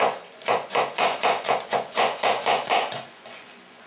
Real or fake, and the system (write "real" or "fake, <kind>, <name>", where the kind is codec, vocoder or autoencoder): fake, vocoder, Vocos